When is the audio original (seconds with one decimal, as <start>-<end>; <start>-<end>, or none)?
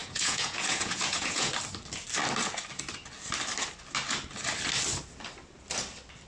1.5-6.3